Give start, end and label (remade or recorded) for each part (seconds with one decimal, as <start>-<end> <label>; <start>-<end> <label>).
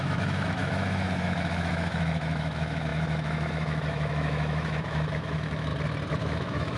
0.0-5.7 remade; 5.7-6.2 recorded; 6.2-6.8 remade